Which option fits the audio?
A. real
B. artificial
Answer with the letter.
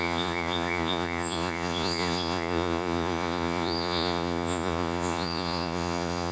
B